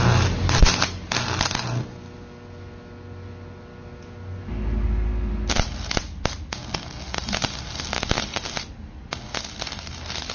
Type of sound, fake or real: real